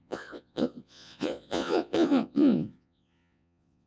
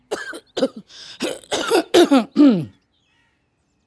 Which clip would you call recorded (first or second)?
second